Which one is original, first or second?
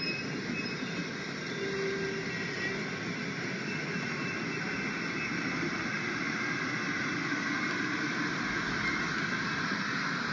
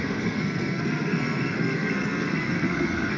first